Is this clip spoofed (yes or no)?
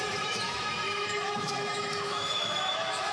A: yes